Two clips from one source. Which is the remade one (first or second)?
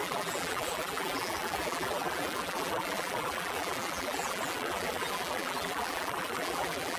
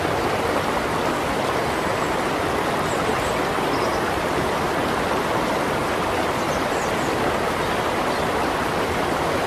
first